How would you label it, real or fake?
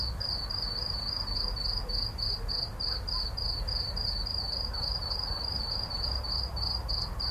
real